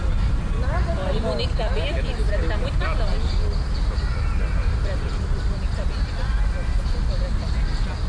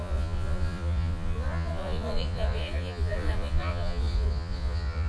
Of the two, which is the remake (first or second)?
second